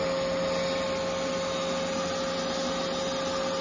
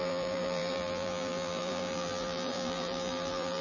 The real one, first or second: first